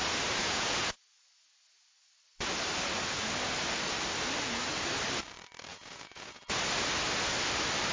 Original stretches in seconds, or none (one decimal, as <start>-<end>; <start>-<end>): 0.0-0.4; 0.9-5.7; 6.4-7.9